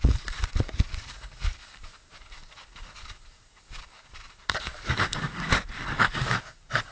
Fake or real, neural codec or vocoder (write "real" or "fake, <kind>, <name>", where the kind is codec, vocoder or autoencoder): fake, codec, DAC